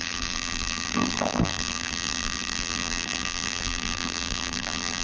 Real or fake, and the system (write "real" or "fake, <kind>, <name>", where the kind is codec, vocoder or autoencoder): fake, vocoder, BigVGAN v2